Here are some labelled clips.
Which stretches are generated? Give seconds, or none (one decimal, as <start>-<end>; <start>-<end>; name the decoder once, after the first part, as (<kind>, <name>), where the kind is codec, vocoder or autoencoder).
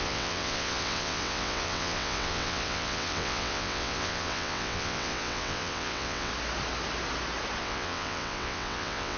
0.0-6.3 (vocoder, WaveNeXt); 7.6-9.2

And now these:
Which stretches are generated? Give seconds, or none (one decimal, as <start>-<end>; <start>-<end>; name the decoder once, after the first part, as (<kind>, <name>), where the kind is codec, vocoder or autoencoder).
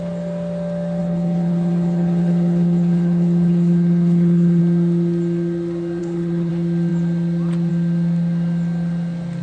1.0-4.6 (codec, HILCodec); 6.0-6.5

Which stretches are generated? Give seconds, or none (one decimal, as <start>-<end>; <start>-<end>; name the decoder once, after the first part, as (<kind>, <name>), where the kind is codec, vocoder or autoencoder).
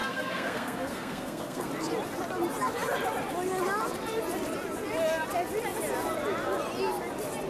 0.0-1.7 (codec, SNAC)